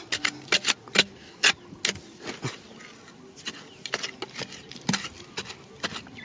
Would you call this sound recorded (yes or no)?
yes